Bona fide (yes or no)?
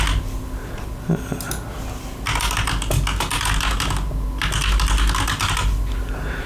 yes